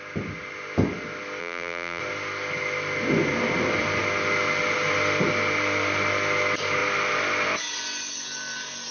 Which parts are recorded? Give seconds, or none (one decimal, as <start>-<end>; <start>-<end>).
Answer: 0.0-1.4; 2.0-8.9